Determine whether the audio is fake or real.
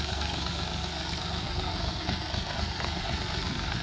fake